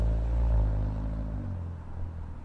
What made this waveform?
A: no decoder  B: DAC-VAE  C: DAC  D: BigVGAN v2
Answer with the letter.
A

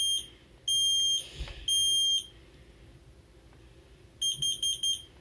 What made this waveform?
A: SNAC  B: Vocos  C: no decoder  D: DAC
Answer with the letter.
C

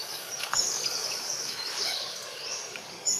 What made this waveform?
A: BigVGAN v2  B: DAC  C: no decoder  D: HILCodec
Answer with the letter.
B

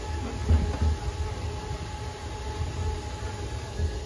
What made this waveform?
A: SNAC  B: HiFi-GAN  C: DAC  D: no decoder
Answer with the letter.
D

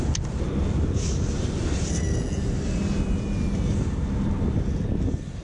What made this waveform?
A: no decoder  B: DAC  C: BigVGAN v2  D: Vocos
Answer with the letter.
A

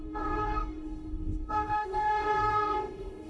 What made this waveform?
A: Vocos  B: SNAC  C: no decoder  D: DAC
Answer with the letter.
D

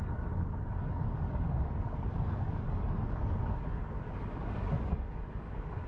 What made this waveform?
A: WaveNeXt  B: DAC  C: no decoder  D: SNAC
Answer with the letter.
B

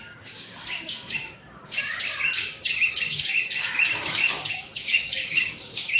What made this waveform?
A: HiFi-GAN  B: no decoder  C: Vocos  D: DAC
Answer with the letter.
D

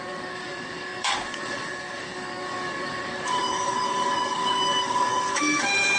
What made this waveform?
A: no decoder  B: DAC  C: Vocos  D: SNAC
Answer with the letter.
B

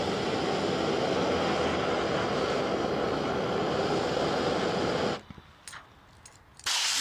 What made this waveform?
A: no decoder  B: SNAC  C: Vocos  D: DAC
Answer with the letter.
A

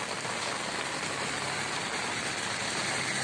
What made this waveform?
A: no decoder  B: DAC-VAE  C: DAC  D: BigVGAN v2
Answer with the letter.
A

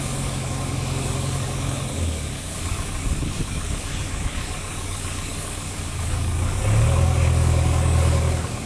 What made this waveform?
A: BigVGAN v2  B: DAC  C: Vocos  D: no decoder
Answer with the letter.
B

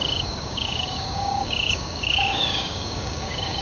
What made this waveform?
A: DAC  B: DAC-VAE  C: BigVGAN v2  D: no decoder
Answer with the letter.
A